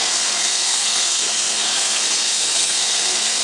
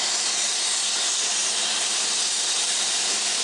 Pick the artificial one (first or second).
first